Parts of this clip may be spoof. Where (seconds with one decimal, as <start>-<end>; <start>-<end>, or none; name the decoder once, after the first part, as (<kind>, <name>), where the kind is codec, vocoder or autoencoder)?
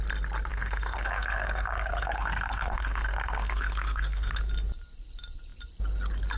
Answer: 0.5-4.3 (codec, SNAC)